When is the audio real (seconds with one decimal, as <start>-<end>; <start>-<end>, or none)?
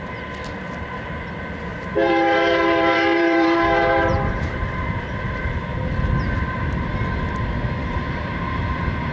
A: 0.0-1.7; 5.6-9.1